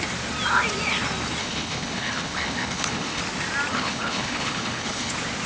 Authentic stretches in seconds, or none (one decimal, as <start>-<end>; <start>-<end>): 0.0-1.4; 3.2-3.7; 5.1-5.5